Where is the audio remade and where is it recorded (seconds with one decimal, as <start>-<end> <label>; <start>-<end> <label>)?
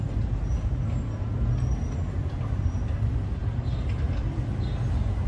0.0-5.3 recorded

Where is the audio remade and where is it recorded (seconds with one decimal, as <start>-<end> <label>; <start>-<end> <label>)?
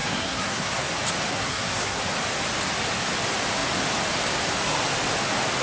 0.0-0.9 remade; 0.9-1.3 recorded; 1.3-2.0 remade; 2.0-5.6 recorded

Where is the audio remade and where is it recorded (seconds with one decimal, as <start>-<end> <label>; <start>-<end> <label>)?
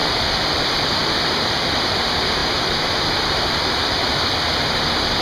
0.0-5.2 recorded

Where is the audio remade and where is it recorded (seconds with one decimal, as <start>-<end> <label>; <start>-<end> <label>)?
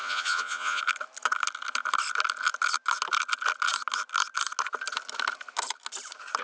0.0-0.8 remade; 0.8-6.4 recorded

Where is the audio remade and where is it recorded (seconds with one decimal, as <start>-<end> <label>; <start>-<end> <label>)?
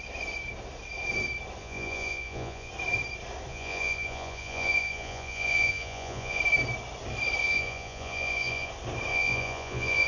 0.0-1.6 recorded; 1.6-2.7 remade; 2.7-3.5 recorded; 3.5-6.4 remade; 6.4-7.4 recorded; 7.4-8.7 remade; 8.7-9.1 recorded; 9.1-10.1 remade